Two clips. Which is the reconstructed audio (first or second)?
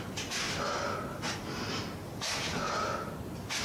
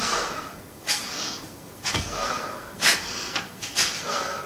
second